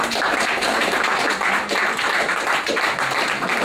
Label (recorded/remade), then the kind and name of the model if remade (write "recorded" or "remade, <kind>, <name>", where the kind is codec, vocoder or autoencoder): remade, vocoder, BigVGAN v2